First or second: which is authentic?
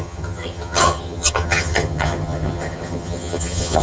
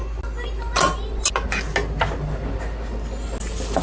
second